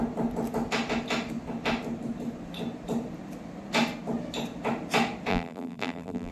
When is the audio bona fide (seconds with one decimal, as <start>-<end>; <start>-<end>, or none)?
0.0-5.3